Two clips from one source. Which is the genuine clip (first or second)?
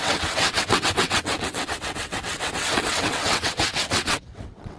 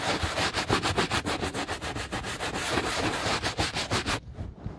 second